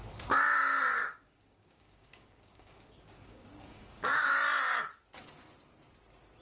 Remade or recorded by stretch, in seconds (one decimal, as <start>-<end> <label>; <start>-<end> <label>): 0.0-0.9 recorded; 0.9-4.3 remade; 4.3-6.4 recorded